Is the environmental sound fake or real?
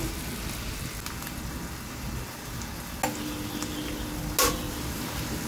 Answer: real